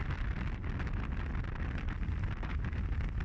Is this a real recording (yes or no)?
yes